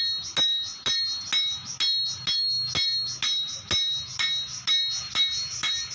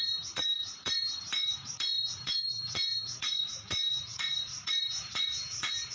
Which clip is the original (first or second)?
first